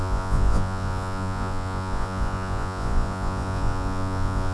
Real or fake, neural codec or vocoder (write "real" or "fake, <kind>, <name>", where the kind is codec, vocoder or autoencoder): fake, vocoder, Vocos